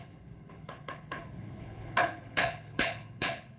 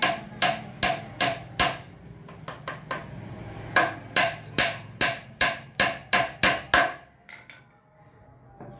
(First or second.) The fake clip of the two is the first